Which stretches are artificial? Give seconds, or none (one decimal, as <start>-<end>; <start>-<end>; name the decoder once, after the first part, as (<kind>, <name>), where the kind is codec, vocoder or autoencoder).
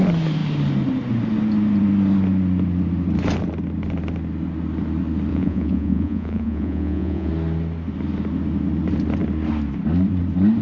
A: 5.3-7.3 (vocoder, Vocos)